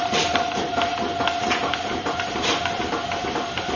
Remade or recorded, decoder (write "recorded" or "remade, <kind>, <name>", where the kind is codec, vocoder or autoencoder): recorded